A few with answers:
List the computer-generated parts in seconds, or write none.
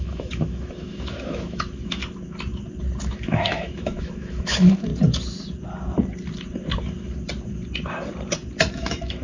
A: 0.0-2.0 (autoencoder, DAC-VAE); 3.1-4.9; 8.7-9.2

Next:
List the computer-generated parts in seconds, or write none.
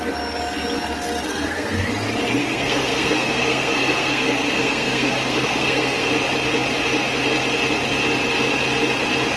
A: 1.3-1.9 (codec, SNAC); 2.4-6.1